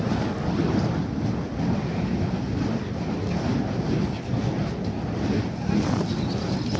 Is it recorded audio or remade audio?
recorded